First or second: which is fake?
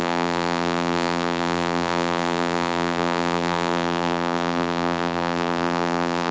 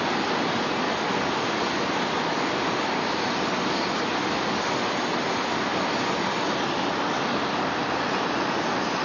first